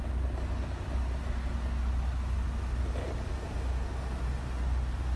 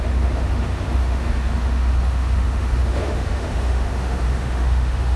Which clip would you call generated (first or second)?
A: second